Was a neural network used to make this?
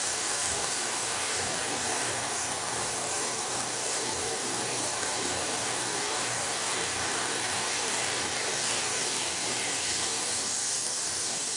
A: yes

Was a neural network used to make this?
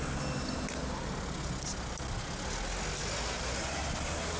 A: no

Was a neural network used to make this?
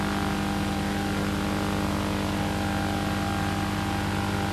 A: no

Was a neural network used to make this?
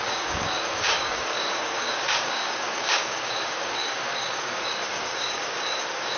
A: yes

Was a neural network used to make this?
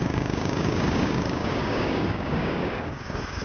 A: yes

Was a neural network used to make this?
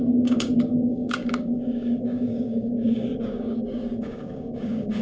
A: yes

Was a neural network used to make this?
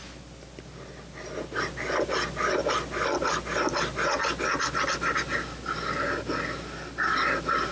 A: no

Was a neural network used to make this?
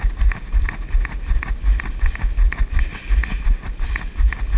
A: no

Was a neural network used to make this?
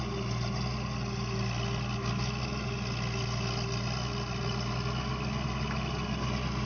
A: no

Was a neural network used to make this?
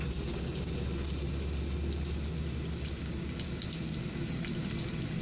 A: no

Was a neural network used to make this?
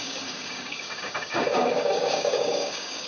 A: yes